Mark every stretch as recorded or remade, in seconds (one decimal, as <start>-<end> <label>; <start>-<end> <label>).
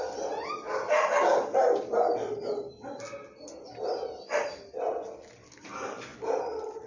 0.0-6.9 recorded